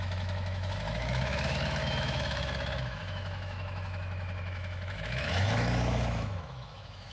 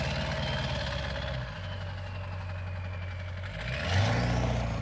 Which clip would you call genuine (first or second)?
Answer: second